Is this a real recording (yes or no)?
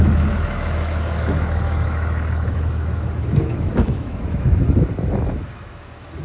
no